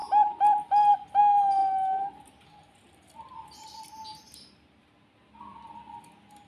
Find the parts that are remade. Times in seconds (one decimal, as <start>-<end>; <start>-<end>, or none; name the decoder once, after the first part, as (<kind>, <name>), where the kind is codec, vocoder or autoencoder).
none